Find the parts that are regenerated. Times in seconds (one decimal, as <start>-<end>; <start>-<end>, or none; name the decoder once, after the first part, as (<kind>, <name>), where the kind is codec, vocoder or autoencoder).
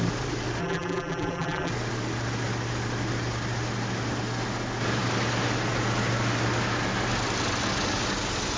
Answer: 0.6-1.7 (vocoder, BigVGAN v2)